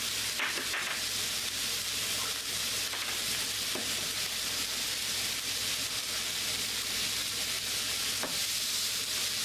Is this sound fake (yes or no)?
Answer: no